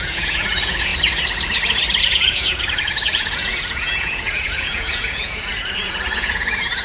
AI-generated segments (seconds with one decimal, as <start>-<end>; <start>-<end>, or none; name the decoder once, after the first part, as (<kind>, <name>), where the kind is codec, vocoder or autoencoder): 0.0-0.9 (vocoder, Vocos); 2.0-6.8